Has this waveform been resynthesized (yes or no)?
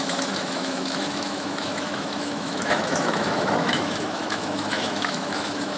yes